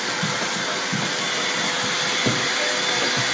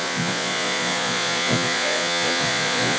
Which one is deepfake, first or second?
second